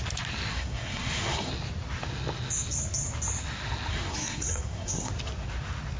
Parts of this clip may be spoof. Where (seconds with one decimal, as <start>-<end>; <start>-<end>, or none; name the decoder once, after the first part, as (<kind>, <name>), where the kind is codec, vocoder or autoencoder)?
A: 0.5-1.5 (codec, SNAC); 3.9-5.1